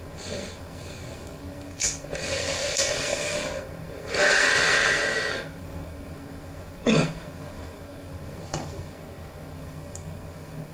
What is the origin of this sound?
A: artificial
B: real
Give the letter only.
A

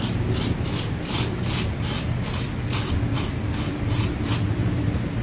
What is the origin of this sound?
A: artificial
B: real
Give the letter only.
B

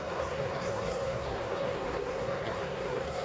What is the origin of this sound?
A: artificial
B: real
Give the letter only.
A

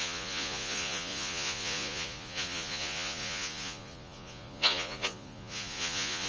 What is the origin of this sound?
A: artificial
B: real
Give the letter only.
A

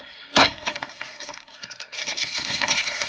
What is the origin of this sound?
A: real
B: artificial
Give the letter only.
B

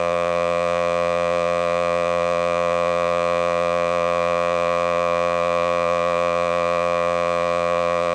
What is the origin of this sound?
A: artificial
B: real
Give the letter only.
A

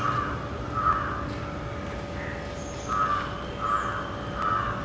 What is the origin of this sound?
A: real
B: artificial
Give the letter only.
A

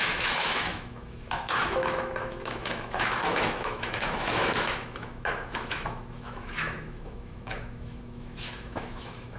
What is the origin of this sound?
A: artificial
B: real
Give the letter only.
A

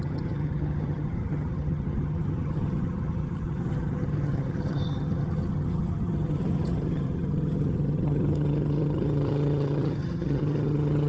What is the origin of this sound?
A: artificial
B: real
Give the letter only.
A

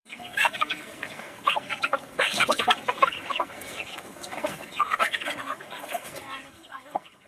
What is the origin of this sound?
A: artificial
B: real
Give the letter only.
A